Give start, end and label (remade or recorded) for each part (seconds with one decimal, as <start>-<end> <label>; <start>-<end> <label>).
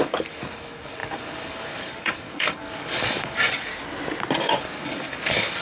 0.0-3.7 remade; 3.7-4.4 recorded; 4.4-5.6 remade